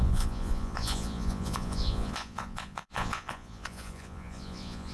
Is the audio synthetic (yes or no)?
yes